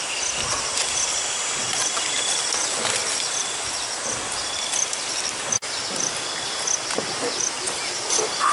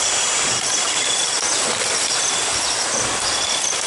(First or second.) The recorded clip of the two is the first